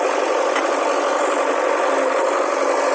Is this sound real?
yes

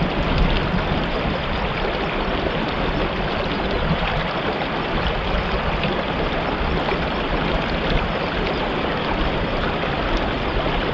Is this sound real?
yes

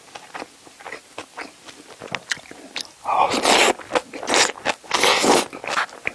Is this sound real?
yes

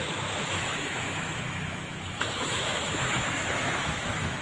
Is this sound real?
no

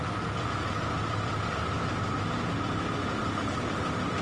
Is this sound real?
yes